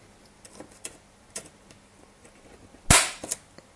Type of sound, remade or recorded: recorded